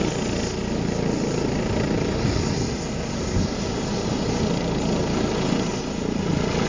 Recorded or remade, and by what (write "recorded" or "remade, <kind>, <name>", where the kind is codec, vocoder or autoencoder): recorded